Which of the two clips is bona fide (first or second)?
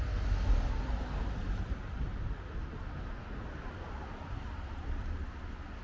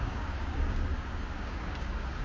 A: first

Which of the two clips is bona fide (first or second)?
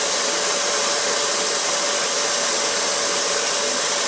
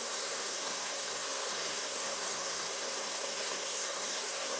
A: first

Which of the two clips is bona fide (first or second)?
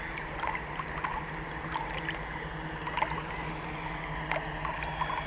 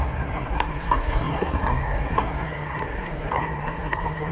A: first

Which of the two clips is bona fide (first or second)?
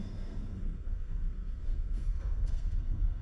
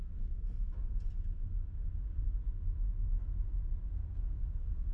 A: second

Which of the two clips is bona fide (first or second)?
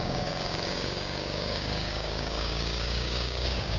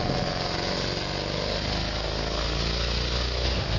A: second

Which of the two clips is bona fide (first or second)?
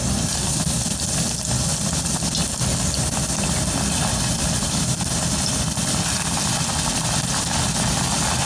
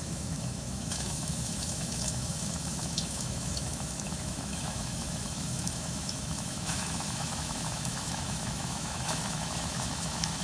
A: first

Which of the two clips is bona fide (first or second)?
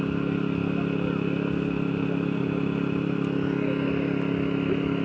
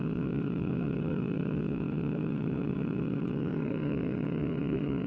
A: first